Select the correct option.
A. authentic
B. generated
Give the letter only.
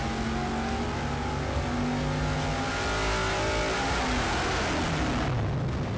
A